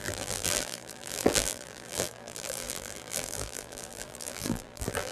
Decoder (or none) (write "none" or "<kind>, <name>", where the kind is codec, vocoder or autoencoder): vocoder, BigVGAN v2